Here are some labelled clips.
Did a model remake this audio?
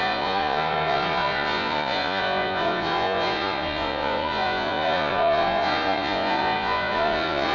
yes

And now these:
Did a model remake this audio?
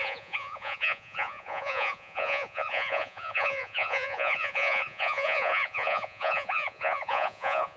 yes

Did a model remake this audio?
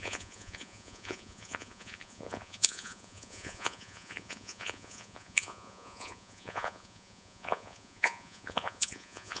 yes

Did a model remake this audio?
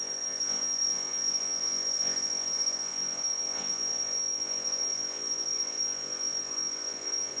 yes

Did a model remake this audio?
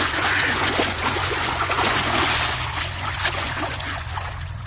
yes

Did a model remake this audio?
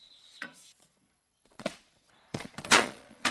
yes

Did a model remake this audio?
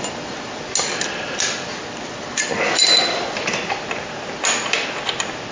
no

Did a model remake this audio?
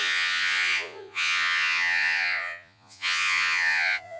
yes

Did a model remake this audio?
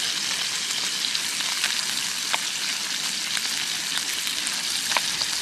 no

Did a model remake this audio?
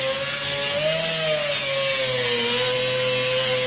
no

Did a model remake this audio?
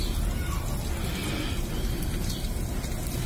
no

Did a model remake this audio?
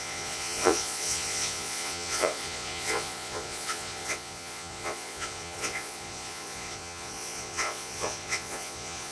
yes